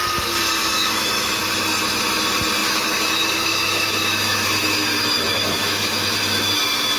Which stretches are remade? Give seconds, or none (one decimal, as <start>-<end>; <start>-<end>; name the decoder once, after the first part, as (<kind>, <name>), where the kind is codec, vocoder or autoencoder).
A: 0.6-1.5 (autoencoder, DAC-VAE); 2.6-6.6